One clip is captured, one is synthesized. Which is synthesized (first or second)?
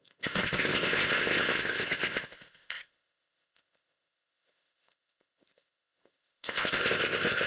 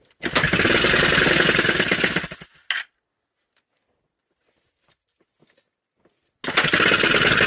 first